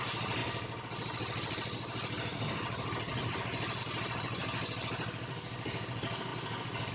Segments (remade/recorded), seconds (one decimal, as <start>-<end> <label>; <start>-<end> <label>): 0.0-6.9 recorded